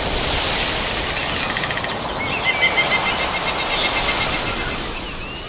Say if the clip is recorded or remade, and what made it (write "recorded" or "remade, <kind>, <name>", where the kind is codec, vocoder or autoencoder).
recorded